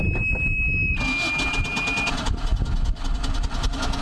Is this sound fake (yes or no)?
no